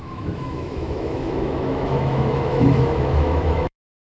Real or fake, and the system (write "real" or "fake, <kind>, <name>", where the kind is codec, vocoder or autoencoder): fake, autoencoder, DAC-VAE